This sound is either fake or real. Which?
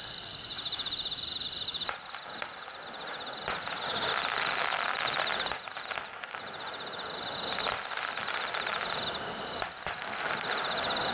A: real